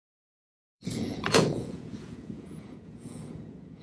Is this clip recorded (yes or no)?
no